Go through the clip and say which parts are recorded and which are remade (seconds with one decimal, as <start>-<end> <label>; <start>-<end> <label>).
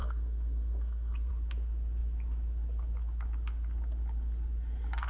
0.0-1.3 remade; 1.3-5.1 recorded